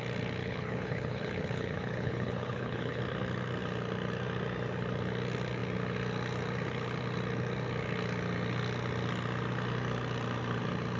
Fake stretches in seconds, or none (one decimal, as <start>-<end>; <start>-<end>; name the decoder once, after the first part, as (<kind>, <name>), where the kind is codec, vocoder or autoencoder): 0.4-3.0 (codec, HILCodec)